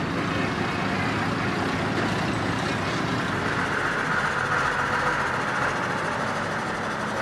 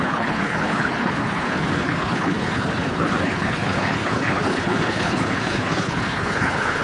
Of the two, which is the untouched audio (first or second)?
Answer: first